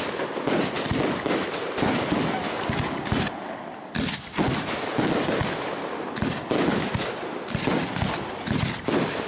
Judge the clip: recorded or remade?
recorded